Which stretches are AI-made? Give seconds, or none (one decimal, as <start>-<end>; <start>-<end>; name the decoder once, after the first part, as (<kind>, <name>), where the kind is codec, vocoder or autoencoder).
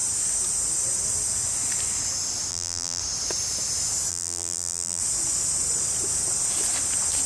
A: 2.5-3.0 (vocoder, BigVGAN v2); 4.1-5.0